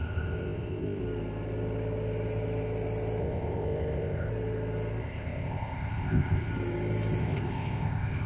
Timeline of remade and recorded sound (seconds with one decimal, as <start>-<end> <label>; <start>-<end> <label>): 0.0-1.0 remade; 1.0-3.2 recorded; 3.2-4.3 remade; 4.3-5.0 recorded; 5.0-6.5 remade; 6.5-7.2 recorded; 7.2-8.3 remade